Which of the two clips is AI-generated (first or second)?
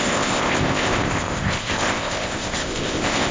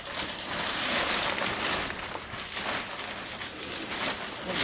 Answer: first